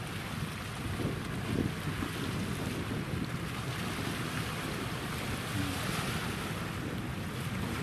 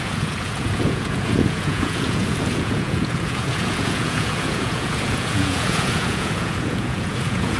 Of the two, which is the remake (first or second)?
second